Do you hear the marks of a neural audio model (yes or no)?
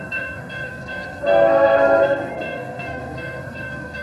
yes